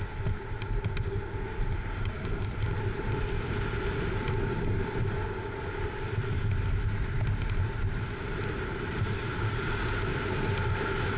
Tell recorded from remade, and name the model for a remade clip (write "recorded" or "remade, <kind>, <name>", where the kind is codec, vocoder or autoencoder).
recorded